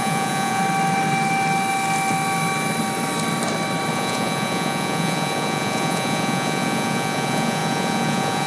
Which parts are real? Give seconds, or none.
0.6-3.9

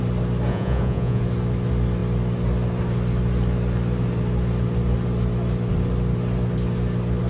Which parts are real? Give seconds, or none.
0.0-0.5; 1.2-7.3

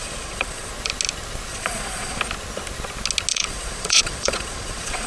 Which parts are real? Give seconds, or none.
0.7-1.5; 2.2-3.3

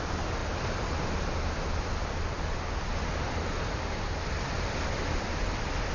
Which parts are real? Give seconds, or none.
0.0-5.9

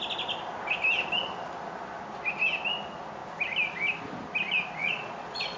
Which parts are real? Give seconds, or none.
0.0-4.8

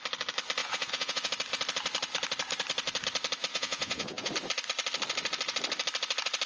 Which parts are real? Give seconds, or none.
0.0-0.6; 1.3-3.5; 4.3-6.5

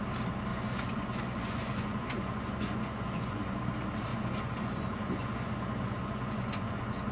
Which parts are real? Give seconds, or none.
0.0-0.5; 3.6-4.1

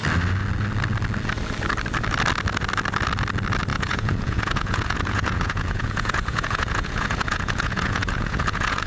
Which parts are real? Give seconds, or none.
0.0-3.7